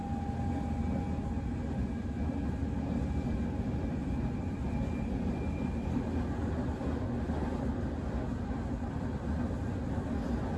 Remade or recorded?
recorded